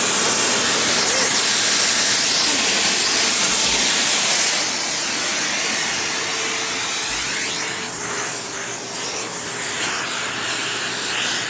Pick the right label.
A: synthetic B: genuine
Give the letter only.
B